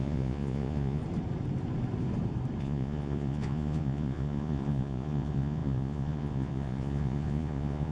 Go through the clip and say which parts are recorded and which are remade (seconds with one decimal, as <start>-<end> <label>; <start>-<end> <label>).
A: 0.0-1.0 remade; 1.0-2.6 recorded; 2.6-7.9 remade